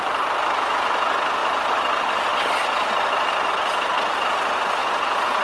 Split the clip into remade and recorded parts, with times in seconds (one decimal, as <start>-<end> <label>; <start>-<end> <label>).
0.0-4.8 recorded; 4.8-5.4 remade